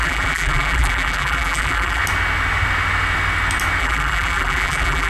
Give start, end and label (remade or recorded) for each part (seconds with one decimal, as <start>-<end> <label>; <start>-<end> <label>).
0.0-2.0 remade; 2.0-3.8 recorded; 3.8-5.1 remade